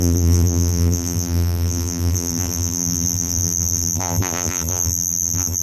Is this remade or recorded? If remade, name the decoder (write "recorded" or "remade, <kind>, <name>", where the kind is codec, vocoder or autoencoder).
remade, vocoder, BigVGAN v2